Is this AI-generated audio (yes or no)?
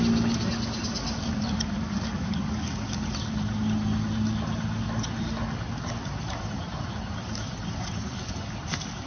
no